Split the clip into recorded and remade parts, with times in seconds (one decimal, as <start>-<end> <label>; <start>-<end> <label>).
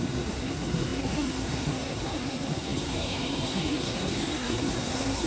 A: 0.0-5.3 remade